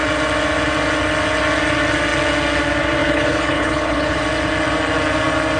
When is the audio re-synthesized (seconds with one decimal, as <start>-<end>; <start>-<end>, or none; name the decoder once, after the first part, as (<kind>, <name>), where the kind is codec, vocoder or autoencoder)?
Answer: 3.0-4.2 (codec, HILCodec)